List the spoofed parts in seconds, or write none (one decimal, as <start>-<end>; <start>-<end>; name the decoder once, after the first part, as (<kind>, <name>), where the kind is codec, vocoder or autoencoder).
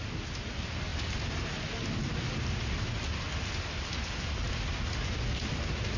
none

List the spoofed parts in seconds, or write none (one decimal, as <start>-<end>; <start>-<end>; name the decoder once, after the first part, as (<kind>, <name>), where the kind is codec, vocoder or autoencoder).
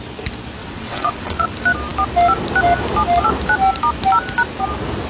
0.6-1.5 (vocoder, WaveNeXt)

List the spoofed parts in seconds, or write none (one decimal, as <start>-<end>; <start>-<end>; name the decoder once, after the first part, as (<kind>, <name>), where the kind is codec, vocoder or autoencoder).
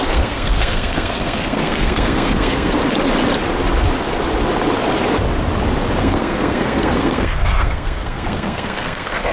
0.0-2.8 (codec, SNAC); 6.0-9.3